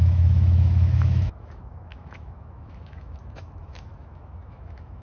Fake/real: fake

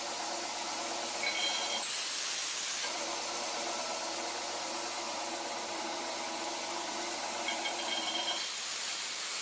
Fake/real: real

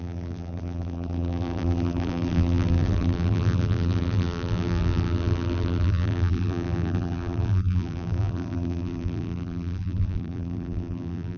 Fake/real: fake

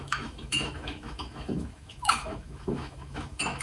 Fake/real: fake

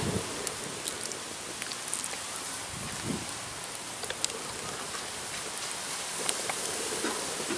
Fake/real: real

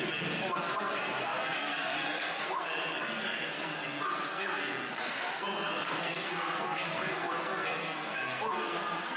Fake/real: fake